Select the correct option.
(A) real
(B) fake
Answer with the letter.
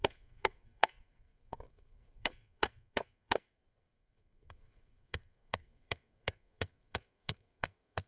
B